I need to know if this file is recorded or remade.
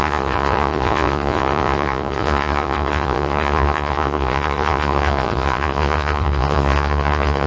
remade